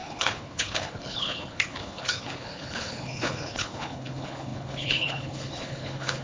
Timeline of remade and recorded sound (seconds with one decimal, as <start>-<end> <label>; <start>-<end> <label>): 0.0-6.2 remade